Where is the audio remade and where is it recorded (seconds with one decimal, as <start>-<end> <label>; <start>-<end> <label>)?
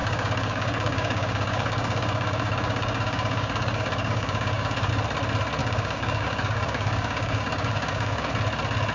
0.0-4.9 remade; 4.9-5.6 recorded; 5.6-8.3 remade; 8.3-8.9 recorded